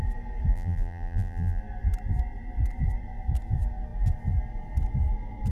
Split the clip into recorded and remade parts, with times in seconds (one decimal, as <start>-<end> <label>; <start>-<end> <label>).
0.0-0.5 recorded; 0.5-1.6 remade; 1.6-5.5 recorded